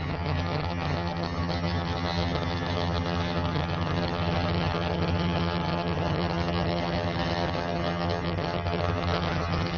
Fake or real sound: fake